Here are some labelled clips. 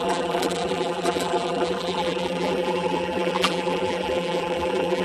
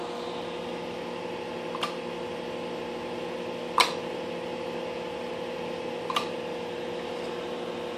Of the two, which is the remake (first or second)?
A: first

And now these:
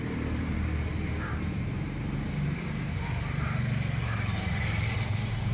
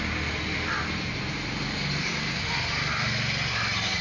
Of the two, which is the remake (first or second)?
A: first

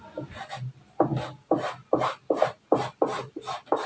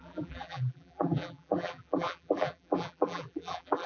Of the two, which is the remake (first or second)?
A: second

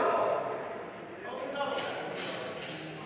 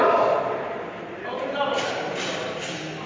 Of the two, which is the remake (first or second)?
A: second